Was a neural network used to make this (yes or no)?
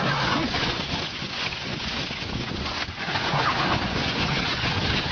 yes